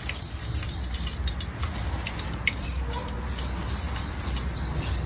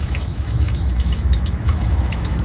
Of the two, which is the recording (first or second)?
first